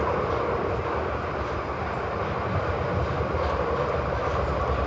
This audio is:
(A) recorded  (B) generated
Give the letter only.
A